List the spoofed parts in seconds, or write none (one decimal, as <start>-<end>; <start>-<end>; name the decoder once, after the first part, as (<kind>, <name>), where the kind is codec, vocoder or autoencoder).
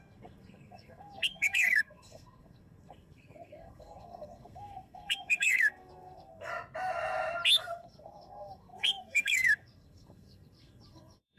0.0-6.5 (codec, SNAC); 7.6-11.4